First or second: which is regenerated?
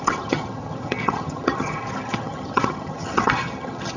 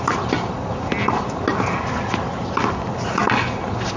first